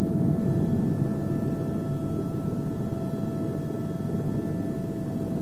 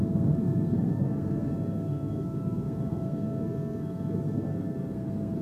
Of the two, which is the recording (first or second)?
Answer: first